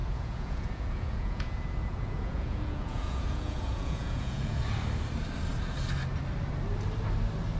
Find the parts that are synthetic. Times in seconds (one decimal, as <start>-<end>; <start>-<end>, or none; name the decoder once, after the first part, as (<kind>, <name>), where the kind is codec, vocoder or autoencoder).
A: 0.0-4.6 (vocoder, Vocos)